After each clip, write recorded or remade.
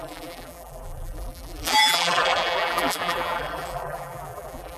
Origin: remade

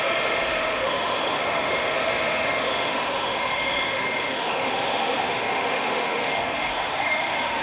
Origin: remade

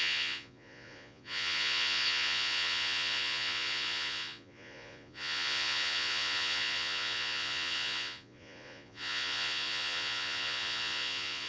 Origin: remade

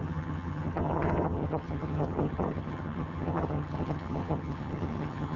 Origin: remade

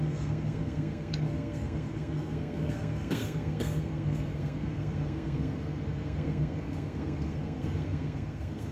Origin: remade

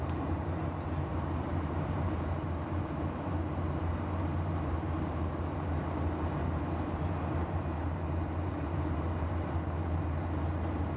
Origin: remade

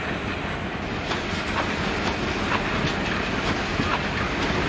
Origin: recorded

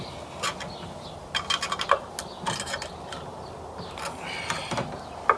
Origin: recorded